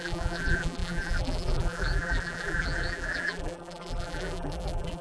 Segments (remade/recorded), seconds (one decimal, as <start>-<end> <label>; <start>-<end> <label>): 0.0-5.0 remade